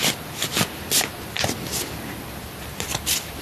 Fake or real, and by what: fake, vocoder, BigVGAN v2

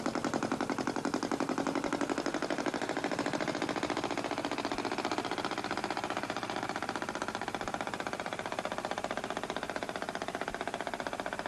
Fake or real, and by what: fake, vocoder, BigVGAN v2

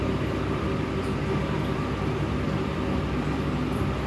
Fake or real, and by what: fake, vocoder, BigVGAN v2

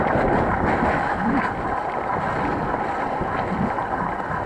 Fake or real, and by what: real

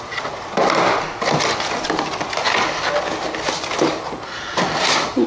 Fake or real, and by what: real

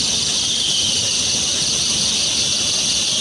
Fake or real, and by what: real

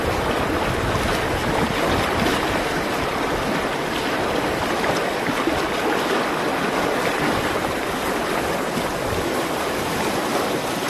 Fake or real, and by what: real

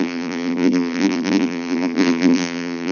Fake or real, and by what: fake, vocoder, BigVGAN v2